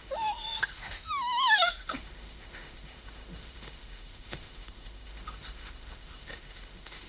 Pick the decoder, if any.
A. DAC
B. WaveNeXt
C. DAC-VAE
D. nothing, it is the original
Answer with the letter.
C